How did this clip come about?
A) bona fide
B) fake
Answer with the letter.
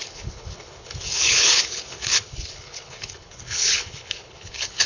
B